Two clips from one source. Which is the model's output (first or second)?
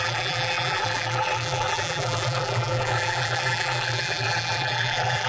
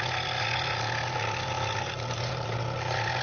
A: first